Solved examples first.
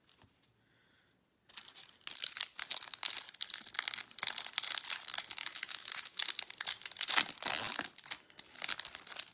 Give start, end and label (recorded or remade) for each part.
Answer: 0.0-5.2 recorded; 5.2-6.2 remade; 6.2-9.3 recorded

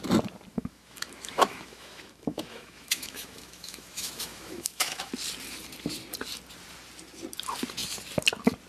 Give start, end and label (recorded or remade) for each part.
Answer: 0.0-0.5 recorded; 0.5-5.1 remade; 5.1-8.7 recorded

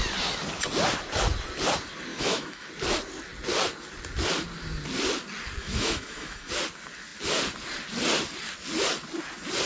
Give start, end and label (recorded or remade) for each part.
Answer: 0.0-2.1 recorded; 2.1-2.7 remade; 2.7-5.6 recorded; 5.6-6.5 remade; 6.5-9.7 recorded

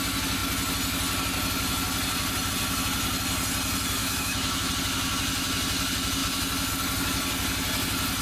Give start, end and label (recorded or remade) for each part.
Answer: 0.0-4.0 recorded; 4.0-4.7 remade; 4.7-8.2 recorded